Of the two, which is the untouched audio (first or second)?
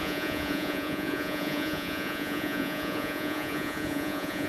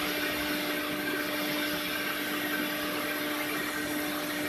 second